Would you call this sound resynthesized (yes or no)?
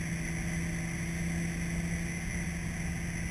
no